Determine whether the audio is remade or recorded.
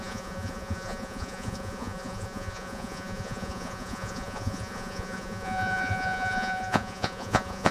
remade